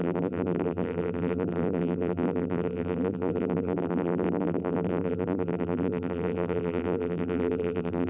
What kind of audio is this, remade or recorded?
remade